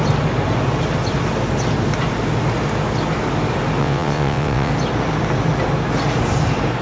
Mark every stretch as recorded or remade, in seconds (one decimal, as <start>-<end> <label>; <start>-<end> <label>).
0.0-3.8 recorded; 3.8-4.7 remade; 4.7-6.8 recorded